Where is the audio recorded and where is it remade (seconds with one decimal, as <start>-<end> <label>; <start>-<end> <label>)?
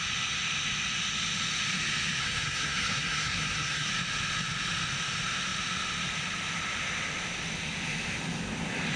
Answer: 0.0-2.2 recorded; 2.2-3.9 remade; 3.9-9.0 recorded